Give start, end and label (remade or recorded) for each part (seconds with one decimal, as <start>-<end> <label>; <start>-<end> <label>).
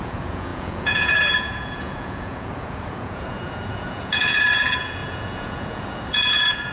0.0-6.7 remade